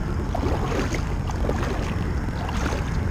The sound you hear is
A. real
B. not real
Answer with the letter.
A